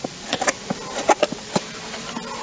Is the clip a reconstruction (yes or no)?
no